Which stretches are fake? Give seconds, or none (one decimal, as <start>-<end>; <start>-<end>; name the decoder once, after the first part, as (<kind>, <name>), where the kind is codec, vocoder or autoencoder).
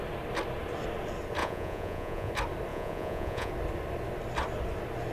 1.4-2.3 (vocoder, Vocos); 2.7-3.5